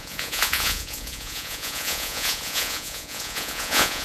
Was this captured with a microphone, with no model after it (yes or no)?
no